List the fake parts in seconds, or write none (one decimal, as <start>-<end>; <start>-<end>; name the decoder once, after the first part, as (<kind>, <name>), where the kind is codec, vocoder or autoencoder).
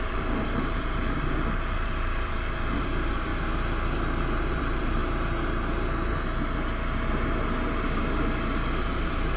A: 0.0-3.3 (vocoder, BigVGAN v2); 4.4-5.0; 8.8-9.4